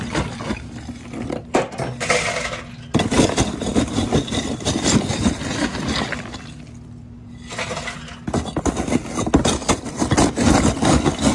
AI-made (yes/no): no